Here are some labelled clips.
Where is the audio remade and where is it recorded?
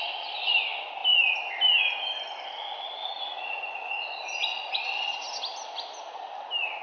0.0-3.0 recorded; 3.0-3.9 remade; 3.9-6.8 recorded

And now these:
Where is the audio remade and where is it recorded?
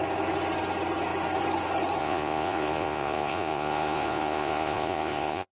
0.0-2.0 recorded; 2.0-5.5 remade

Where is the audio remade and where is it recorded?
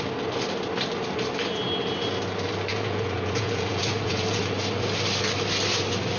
0.0-2.7 recorded; 2.7-4.4 remade; 4.4-6.2 recorded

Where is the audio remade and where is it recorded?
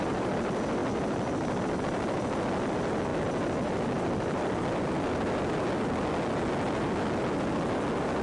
0.0-8.2 recorded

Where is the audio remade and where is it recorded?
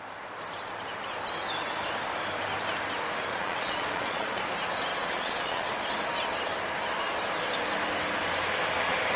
0.0-3.3 recorded; 3.3-4.4 remade; 4.4-4.9 recorded; 4.9-5.7 remade; 5.7-9.2 recorded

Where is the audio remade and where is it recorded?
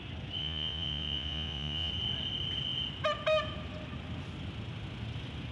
0.0-0.4 recorded; 0.4-1.9 remade; 1.9-5.5 recorded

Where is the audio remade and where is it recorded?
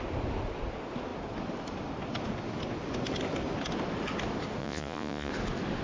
0.0-4.6 recorded; 4.6-5.3 remade; 5.3-5.8 recorded